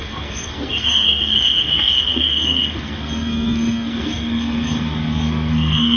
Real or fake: fake